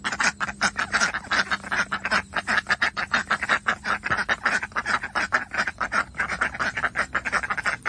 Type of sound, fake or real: real